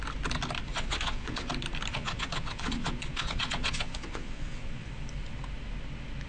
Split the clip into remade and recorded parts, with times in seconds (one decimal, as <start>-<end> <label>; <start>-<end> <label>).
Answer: 0.0-0.7 recorded; 0.7-1.5 remade; 1.5-1.9 recorded; 1.9-4.9 remade; 4.9-6.3 recorded